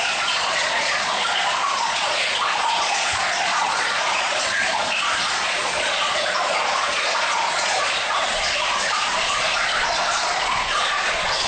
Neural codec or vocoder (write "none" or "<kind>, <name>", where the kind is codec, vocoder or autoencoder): vocoder, Vocos